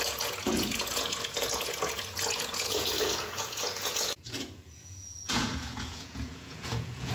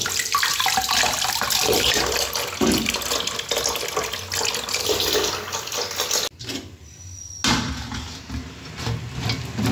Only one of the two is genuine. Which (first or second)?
second